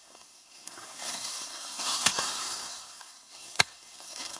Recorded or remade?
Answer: remade